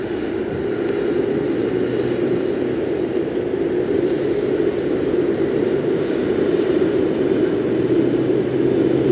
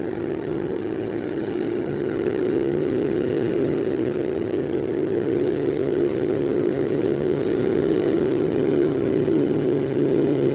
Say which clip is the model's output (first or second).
second